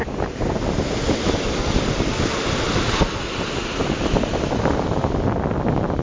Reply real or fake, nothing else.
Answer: real